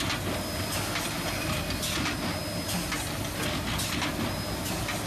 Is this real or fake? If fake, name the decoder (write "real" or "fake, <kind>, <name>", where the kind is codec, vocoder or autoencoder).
real